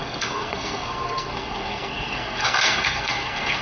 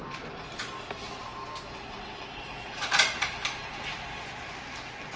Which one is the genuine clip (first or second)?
second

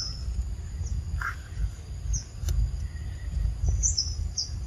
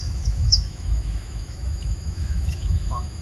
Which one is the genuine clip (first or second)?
first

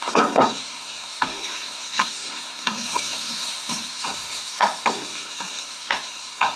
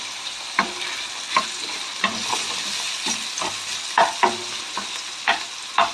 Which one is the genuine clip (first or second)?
second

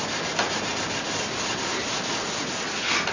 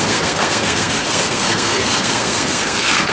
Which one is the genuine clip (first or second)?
first